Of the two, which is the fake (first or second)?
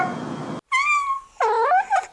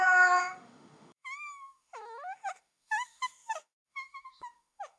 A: second